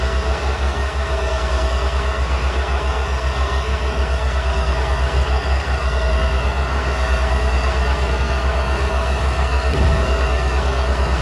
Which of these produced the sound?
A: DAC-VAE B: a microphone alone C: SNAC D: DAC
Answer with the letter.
C